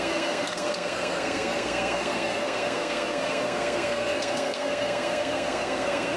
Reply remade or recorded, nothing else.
remade